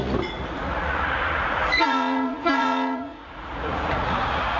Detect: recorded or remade remade